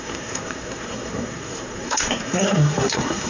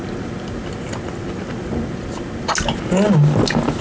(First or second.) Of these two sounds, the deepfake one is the first